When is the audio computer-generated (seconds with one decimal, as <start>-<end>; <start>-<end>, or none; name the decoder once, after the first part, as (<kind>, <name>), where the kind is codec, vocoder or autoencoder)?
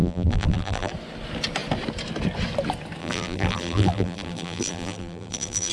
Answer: 0.0-0.9 (vocoder, BigVGAN v2); 3.0-5.7